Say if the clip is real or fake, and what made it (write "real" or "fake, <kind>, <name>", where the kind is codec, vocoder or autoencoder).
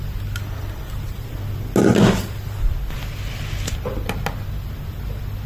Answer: real